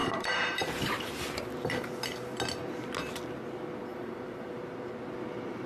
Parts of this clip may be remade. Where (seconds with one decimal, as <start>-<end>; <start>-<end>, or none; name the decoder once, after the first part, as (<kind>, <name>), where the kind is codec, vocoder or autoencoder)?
0.0-1.4 (vocoder, BigVGAN v2); 3.9-4.6